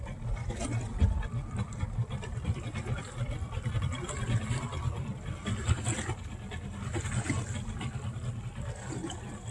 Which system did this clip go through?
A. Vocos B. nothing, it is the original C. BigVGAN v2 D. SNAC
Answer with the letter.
B